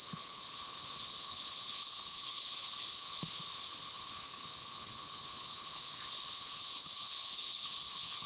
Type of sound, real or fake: fake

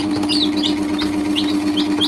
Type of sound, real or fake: real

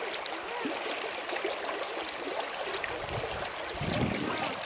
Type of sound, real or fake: real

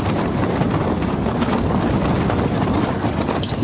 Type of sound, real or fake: real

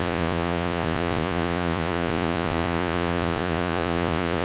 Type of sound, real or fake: fake